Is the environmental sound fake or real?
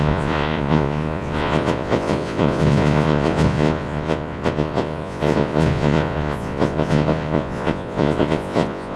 fake